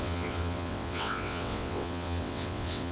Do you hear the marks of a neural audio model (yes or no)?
yes